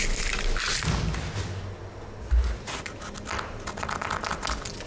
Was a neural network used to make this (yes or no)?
no